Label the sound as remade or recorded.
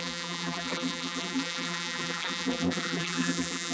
remade